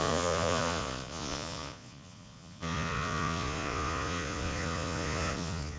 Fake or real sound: fake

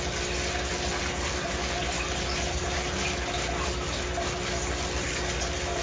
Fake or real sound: real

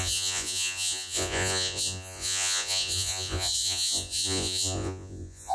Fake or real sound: fake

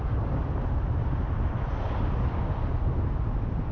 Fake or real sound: real